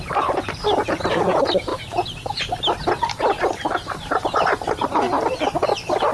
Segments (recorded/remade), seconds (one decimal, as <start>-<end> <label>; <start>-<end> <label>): 0.0-6.1 recorded